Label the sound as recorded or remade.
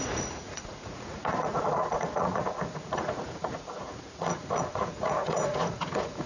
remade